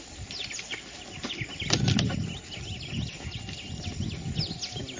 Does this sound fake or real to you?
real